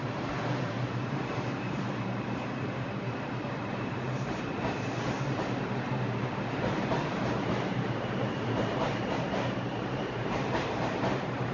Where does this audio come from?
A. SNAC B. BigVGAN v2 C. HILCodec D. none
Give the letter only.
B